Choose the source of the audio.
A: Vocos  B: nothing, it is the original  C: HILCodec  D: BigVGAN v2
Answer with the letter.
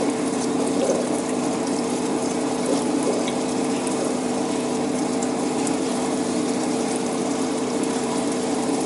D